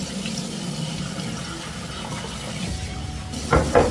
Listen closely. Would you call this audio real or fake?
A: real